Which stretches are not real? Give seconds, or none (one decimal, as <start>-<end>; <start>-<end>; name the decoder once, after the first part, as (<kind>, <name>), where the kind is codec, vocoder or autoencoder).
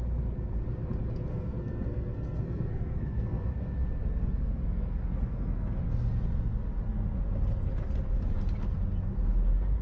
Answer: 1.3-3.5 (codec, SNAC); 4.2-5.8